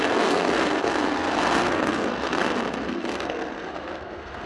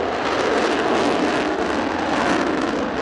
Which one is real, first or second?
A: second